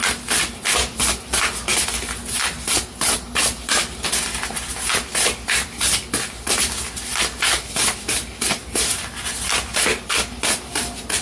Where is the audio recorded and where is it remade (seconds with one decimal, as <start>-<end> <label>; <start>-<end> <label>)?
0.0-11.2 recorded